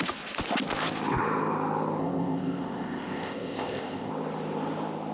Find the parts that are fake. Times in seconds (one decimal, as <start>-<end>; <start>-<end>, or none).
2.0-4.1